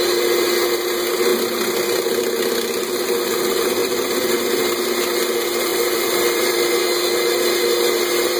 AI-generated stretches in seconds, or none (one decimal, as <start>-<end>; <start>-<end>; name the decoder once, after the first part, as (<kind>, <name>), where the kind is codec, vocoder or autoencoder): 3.8-4.3 (vocoder, BigVGAN v2); 5.7-6.7